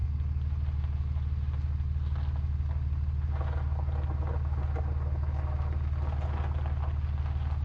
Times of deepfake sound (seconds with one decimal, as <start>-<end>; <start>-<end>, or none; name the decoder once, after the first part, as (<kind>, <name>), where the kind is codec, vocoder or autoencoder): none